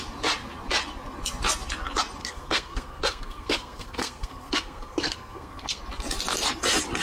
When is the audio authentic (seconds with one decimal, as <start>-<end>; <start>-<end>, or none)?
0.0-2.2; 5.8-7.0